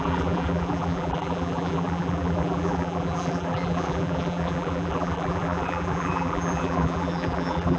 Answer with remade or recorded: remade